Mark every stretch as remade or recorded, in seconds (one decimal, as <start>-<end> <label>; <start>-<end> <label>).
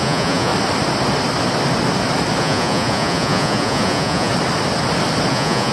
0.0-0.5 remade; 0.5-2.4 recorded; 2.4-4.3 remade; 4.3-5.3 recorded; 5.3-5.7 remade